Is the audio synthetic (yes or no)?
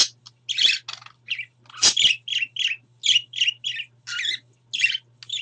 no